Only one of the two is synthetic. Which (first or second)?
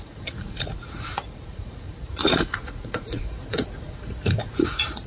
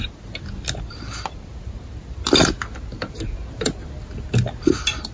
first